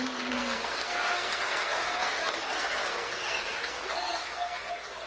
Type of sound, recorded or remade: remade